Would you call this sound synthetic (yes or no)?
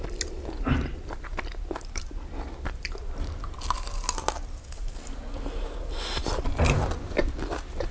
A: no